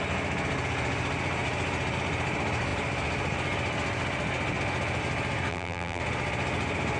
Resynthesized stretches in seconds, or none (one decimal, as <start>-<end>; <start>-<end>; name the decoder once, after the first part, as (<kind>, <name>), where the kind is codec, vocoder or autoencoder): 5.5-6.0 (vocoder, BigVGAN v2)